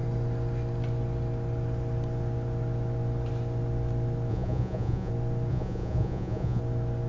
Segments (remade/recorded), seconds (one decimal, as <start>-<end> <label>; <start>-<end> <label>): 0.0-4.3 recorded; 4.3-5.1 remade; 5.1-5.5 recorded; 5.5-6.6 remade; 6.6-7.1 recorded